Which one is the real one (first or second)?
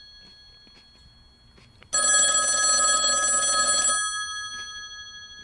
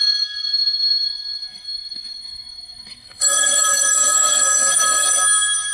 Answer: first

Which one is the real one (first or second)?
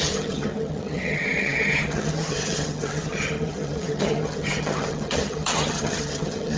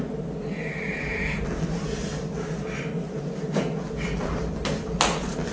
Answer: second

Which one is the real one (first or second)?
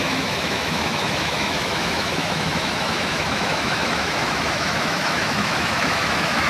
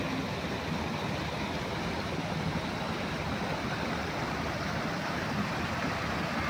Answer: second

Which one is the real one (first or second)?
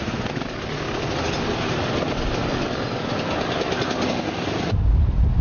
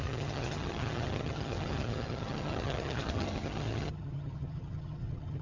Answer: first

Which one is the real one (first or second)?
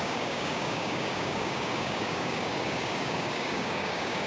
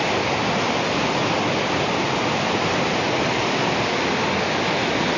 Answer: second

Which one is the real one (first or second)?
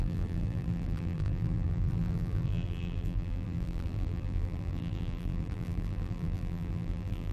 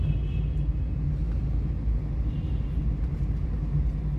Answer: second